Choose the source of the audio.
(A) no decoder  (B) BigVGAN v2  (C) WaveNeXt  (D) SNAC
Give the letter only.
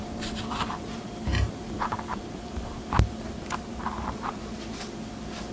B